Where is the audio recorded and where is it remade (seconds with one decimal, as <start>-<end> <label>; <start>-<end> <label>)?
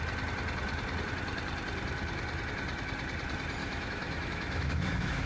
0.0-3.6 recorded; 3.6-5.3 remade